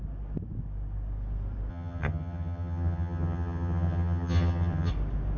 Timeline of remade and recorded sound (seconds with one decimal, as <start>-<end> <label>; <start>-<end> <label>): 0.0-1.7 recorded; 1.7-4.9 remade; 4.9-5.4 recorded

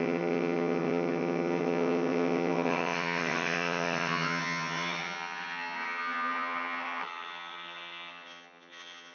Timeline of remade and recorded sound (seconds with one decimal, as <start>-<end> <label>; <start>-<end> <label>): 0.0-9.1 remade

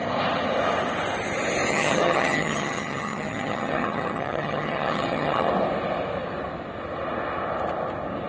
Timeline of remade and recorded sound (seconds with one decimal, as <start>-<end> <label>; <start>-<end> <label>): 0.0-1.7 recorded; 1.7-5.5 remade; 5.5-8.3 recorded

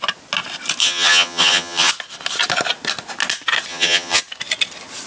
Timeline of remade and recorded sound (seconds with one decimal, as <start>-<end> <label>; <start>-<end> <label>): 0.0-0.8 recorded; 0.8-1.9 remade; 1.9-3.7 recorded; 3.7-4.2 remade; 4.2-5.1 recorded

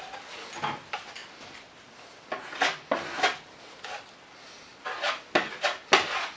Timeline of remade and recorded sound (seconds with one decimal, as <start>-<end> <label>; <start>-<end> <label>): 0.0-6.4 recorded

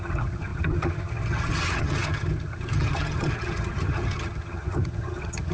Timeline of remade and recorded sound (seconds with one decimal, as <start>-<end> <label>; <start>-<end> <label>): 0.0-5.5 remade

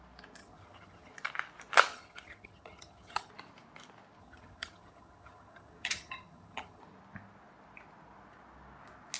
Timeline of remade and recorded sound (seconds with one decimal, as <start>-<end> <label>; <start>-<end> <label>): 0.0-0.4 recorded; 0.4-1.1 remade; 1.1-1.9 recorded; 1.9-3.3 remade; 3.3-4.2 recorded; 4.2-6.8 remade; 6.8-9.2 recorded